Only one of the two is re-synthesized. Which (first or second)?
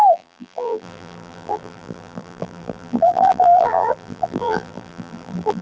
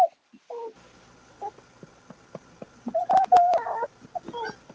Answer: first